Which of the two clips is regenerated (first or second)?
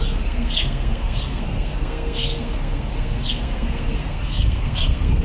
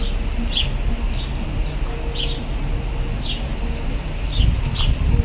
first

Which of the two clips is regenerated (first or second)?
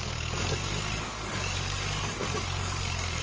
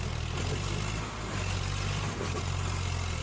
first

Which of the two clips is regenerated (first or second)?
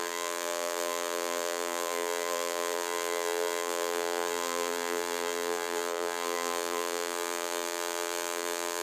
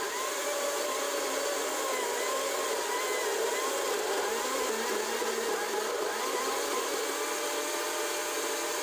first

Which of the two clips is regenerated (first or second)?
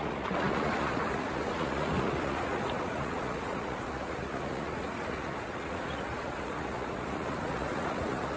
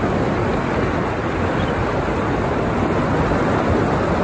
first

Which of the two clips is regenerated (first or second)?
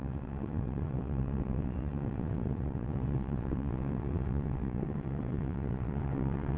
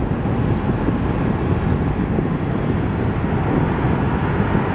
first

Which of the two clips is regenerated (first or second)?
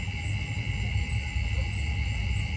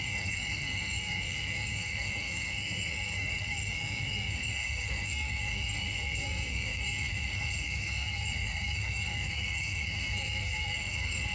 second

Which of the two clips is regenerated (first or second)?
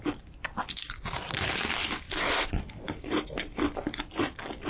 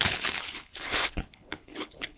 second